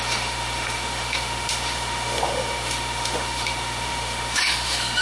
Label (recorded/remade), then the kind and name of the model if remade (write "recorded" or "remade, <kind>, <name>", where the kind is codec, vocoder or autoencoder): remade, autoencoder, DAC-VAE